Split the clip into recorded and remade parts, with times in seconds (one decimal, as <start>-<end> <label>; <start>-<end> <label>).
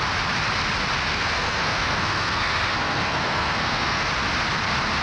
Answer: 0.0-1.1 recorded; 1.1-4.1 remade; 4.1-5.0 recorded